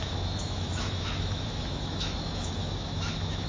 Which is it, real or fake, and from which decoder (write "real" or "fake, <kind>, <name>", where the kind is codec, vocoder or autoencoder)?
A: fake, autoencoder, DAC-VAE